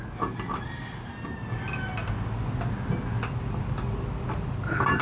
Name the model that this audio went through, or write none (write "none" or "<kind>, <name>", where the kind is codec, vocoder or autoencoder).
none